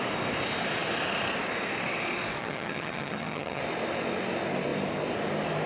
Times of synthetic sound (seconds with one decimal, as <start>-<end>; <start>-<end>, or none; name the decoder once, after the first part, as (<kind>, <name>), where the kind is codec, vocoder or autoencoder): 2.4-3.6 (vocoder, HiFi-GAN)